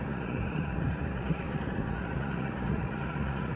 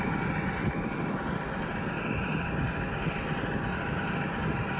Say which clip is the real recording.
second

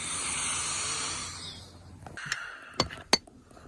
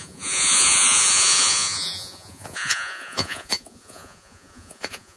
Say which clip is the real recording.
first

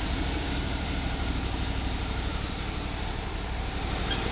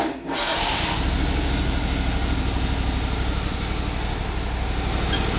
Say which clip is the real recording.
second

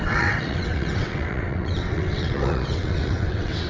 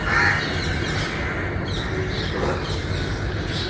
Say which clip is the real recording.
second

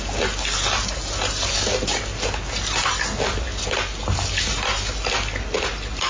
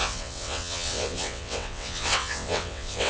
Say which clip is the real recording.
first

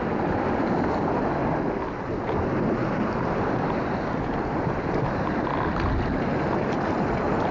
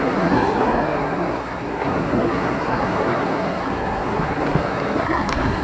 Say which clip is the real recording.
first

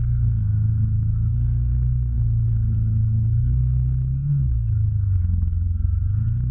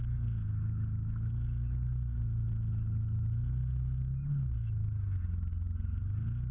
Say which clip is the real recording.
second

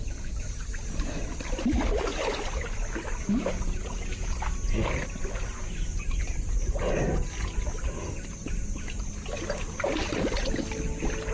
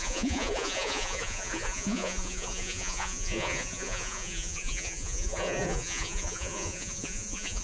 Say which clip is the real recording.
first